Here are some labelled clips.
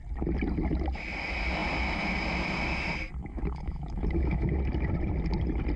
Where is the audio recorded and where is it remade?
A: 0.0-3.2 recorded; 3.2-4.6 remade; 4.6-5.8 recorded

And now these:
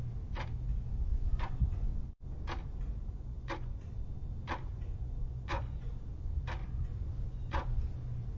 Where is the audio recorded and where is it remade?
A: 0.0-1.1 recorded; 1.1-1.9 remade; 1.9-3.0 recorded; 3.0-3.8 remade; 3.8-4.7 recorded; 4.7-5.9 remade; 5.9-6.6 recorded; 6.6-7.8 remade; 7.8-8.4 recorded

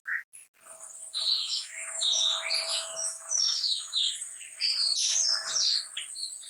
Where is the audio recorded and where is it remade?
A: 0.0-1.4 recorded; 1.4-2.2 remade; 2.2-2.7 recorded; 2.7-4.1 remade; 4.1-6.5 recorded

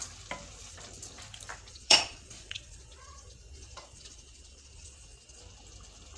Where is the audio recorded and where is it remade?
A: 0.0-1.7 recorded; 1.7-5.4 remade; 5.4-6.2 recorded

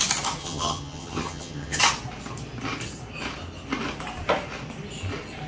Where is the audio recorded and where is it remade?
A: 0.0-0.4 recorded; 0.4-1.8 remade; 1.8-5.5 recorded

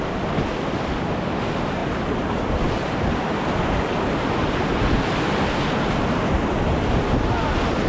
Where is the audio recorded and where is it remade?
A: 0.0-7.9 recorded

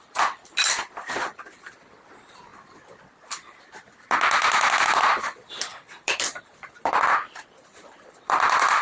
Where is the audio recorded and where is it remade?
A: 0.0-2.5 remade; 2.5-5.2 recorded; 5.2-8.8 remade